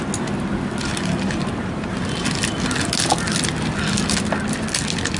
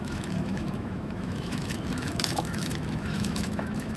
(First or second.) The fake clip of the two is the second